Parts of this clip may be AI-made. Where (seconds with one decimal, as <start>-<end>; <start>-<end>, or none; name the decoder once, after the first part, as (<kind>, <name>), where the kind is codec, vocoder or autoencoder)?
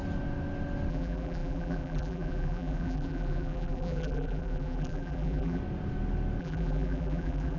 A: 0.9-5.6 (vocoder, BigVGAN v2); 6.4-7.6